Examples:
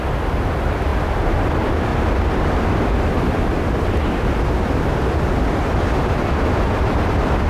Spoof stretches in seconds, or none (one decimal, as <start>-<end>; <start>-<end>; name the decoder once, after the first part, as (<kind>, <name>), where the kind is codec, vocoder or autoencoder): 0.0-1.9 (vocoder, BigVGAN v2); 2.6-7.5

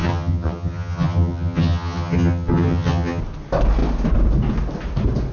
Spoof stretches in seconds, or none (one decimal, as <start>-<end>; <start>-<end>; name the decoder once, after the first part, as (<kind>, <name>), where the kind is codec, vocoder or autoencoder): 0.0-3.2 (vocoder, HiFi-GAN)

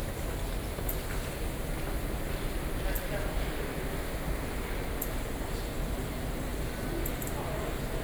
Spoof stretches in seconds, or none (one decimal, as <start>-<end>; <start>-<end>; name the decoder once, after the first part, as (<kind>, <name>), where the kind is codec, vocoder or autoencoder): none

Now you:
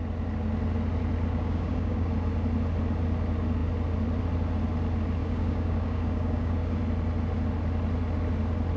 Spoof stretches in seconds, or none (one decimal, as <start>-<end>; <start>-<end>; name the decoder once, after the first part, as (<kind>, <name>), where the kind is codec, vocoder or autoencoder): 1.3-2.1 (codec, DAC); 5.2-6.8

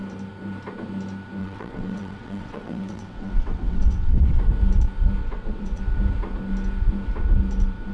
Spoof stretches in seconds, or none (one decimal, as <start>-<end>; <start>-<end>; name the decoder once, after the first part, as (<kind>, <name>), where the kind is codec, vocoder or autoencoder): 1.4-4.4 (vocoder, WaveNeXt); 5.2-5.8

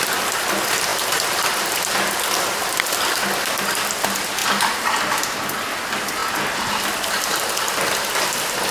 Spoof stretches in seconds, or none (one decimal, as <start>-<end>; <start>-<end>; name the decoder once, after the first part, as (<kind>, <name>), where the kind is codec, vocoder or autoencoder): none